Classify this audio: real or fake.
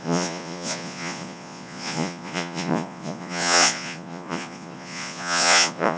fake